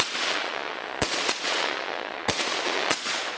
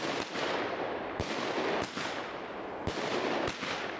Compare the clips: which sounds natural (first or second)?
second